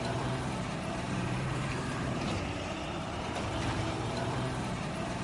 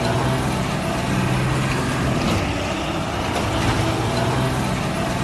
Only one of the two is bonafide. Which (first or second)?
second